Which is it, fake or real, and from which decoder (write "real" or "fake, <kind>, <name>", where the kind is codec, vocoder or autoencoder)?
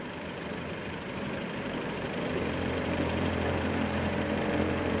fake, vocoder, BigVGAN v2